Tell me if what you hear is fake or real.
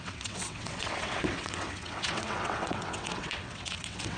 fake